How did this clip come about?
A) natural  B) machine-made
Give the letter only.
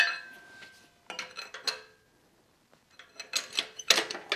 A